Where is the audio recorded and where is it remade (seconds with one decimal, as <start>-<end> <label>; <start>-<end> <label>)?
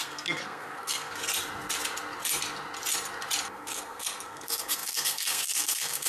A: 0.0-1.3 remade; 1.3-3.5 recorded; 3.5-6.1 remade